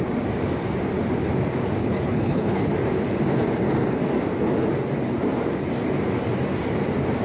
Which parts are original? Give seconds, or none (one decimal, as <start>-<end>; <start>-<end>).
0.0-1.8; 2.7-7.2